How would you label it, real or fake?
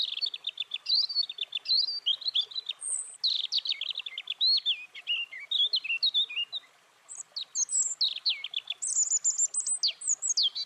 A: real